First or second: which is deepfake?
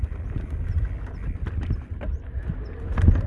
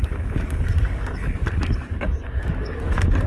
second